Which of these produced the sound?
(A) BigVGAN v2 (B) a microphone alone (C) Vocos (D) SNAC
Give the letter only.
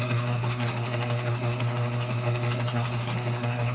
D